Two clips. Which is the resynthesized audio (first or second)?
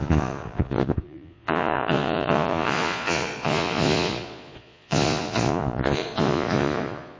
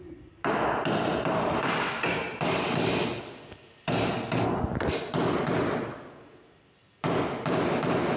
first